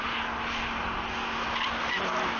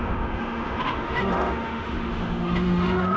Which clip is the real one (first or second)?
first